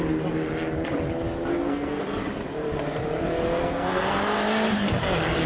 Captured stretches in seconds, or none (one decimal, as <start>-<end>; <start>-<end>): 0.0-1.5; 2.0-3.6; 4.2-5.5